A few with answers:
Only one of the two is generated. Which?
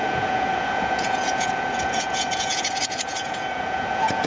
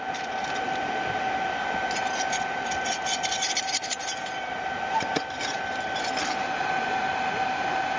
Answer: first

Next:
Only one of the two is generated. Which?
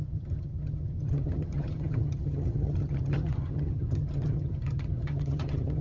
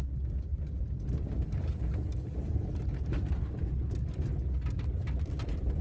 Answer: first